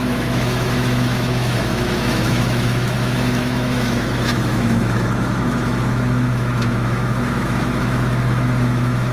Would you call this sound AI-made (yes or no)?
yes